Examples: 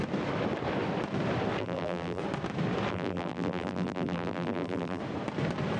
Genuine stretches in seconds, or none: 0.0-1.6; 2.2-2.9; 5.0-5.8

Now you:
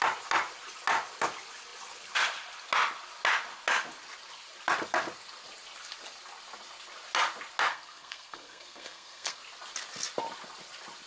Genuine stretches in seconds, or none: 0.0-7.7; 9.4-11.1